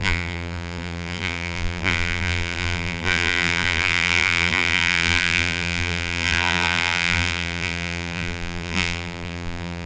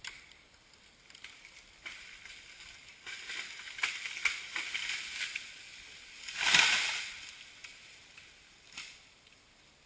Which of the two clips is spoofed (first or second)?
first